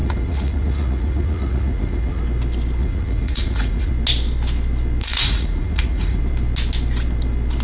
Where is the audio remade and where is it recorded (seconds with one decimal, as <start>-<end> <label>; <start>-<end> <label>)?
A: 0.0-2.2 remade; 2.2-2.8 recorded; 2.8-3.9 remade; 3.9-5.0 recorded; 5.0-6.2 remade; 6.2-7.6 recorded